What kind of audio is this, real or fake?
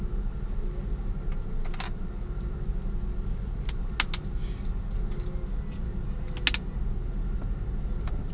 real